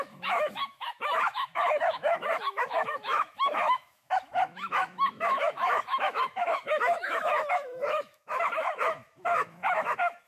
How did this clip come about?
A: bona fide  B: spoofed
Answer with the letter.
B